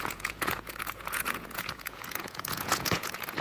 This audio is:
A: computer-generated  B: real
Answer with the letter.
A